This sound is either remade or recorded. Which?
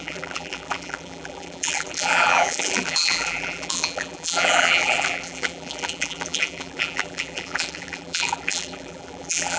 remade